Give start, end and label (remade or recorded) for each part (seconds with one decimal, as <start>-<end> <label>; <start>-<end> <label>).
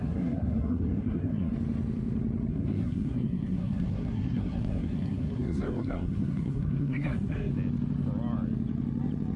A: 0.0-1.5 remade; 1.5-2.5 recorded; 2.5-7.5 remade; 7.5-9.4 recorded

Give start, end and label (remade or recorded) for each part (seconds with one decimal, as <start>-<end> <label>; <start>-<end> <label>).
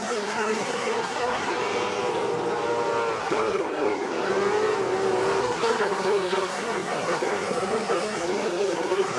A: 0.0-1.6 remade; 1.6-3.2 recorded; 3.2-4.3 remade; 4.3-5.4 recorded; 5.4-9.2 remade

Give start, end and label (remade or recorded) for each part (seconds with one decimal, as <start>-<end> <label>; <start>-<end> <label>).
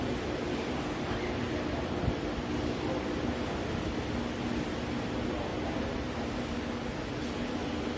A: 0.0-5.5 recorded; 5.5-6.6 remade; 6.6-8.0 recorded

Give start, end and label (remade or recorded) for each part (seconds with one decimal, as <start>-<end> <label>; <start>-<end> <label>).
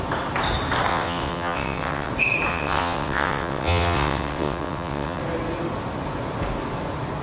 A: 0.0-0.9 recorded; 0.9-2.1 remade; 2.1-2.5 recorded; 2.5-5.2 remade; 5.2-7.2 recorded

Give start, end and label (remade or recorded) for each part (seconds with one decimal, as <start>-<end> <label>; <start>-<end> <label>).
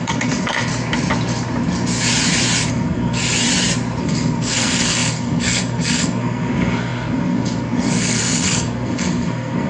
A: 0.0-0.7 remade; 0.7-2.7 recorded; 2.7-3.2 remade; 3.2-4.0 recorded; 4.0-9.7 remade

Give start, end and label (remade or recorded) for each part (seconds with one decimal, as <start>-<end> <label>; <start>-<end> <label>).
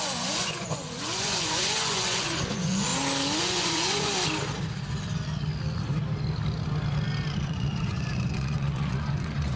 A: 0.0-2.9 remade; 2.9-3.4 recorded; 3.4-4.1 remade; 4.1-7.4 recorded; 7.4-9.6 remade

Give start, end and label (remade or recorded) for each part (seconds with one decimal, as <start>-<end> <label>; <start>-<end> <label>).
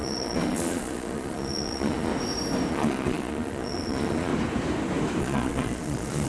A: 0.0-2.1 remade; 2.1-2.7 recorded; 2.7-4.3 remade; 4.3-5.2 recorded; 5.2-6.3 remade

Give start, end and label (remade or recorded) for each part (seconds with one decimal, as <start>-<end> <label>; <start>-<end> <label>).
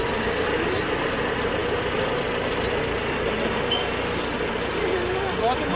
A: 0.0-5.8 recorded